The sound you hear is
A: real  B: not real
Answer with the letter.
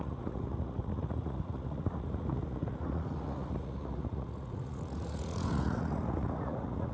B